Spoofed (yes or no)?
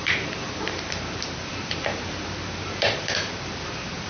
yes